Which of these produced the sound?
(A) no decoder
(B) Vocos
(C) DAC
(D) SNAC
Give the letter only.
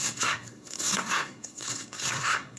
D